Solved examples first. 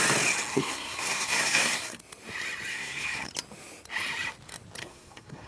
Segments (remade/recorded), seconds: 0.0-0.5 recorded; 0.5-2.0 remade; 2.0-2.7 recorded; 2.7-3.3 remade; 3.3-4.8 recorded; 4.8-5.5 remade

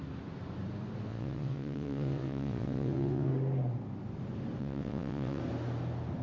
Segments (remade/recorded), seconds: 0.0-1.1 recorded; 1.1-3.3 remade; 3.3-4.6 recorded; 4.6-5.4 remade; 5.4-6.2 recorded

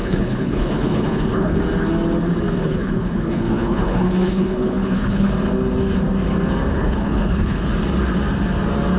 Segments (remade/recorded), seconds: 0.0-1.6 remade; 1.6-2.6 recorded; 2.6-5.3 remade; 5.3-6.7 recorded; 6.7-7.7 remade; 7.7-9.0 recorded

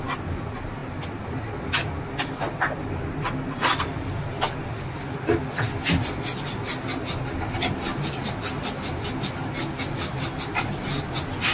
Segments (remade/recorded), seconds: 0.0-11.5 recorded

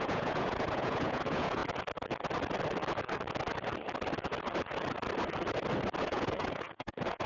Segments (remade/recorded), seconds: 0.0-1.6 remade; 1.6-6.0 recorded; 6.0-7.3 remade

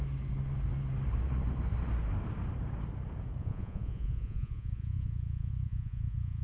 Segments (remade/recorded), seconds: 0.0-3.4 recorded; 3.4-6.4 remade